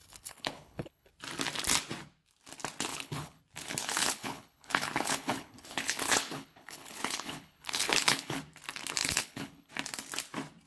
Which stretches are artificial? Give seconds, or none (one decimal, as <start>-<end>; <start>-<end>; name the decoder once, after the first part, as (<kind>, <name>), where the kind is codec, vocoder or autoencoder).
0.0-1.1 (codec, HILCodec); 2.9-3.4; 3.8-8.4; 9.0-9.7